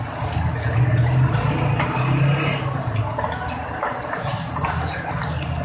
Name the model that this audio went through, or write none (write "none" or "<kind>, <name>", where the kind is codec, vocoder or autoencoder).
none